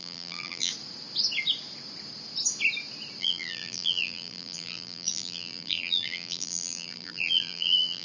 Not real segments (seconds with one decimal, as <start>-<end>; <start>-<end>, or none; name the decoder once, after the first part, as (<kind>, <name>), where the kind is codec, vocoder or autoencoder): 0.0-0.7 (vocoder, BigVGAN v2); 3.2-8.0